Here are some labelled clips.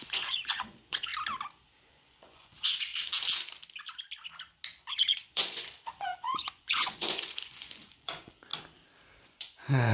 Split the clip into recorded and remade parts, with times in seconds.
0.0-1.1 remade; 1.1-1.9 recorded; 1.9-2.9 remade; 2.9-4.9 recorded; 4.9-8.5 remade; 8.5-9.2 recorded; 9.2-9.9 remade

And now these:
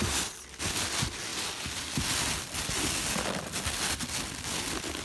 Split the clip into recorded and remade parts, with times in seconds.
0.0-5.0 recorded

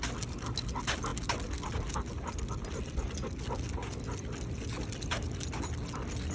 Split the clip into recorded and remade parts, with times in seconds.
0.0-6.3 recorded

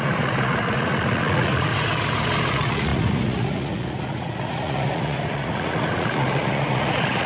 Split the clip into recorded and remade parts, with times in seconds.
0.0-1.7 remade; 1.7-2.5 recorded; 2.5-7.3 remade

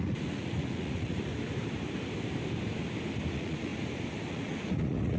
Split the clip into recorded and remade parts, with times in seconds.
0.0-1.3 remade; 1.3-3.3 recorded; 3.3-3.7 remade; 3.7-4.3 recorded; 4.3-5.2 remade

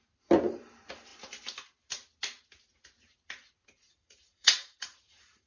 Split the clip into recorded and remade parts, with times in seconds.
0.0-3.9 recorded; 3.9-5.5 remade

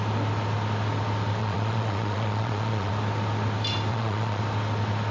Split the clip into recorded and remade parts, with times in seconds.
0.0-1.4 recorded; 1.4-2.9 remade; 2.9-3.9 recorded; 3.9-4.4 remade; 4.4-5.1 recorded

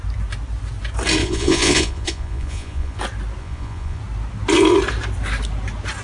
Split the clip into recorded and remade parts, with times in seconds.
0.0-1.2 recorded; 1.2-3.0 remade; 3.0-3.4 recorded; 3.4-4.0 remade; 4.0-6.0 recorded